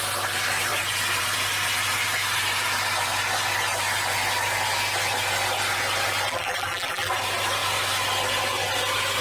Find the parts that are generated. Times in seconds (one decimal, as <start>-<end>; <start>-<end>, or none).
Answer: 6.3-7.1